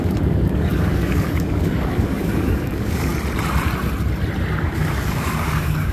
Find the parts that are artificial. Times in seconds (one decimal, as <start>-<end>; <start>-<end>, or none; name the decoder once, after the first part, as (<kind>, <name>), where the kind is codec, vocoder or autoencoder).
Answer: 0.0-3.1 (codec, DAC); 4.6-5.9